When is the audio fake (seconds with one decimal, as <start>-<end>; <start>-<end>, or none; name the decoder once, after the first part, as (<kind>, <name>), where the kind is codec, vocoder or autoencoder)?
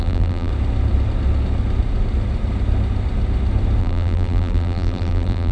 0.0-0.5 (vocoder, BigVGAN v2); 3.8-5.5